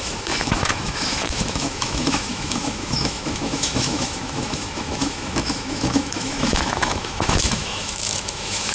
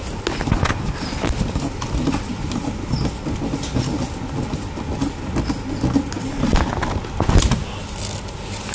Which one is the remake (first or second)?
first